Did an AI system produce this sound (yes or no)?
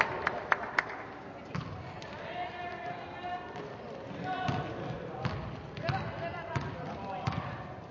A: no